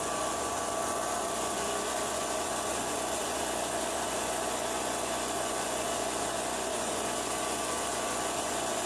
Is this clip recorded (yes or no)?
no